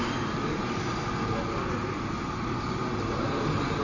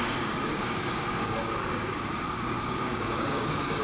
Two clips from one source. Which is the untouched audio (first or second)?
first